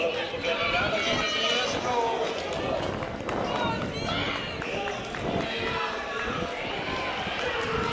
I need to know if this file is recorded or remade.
recorded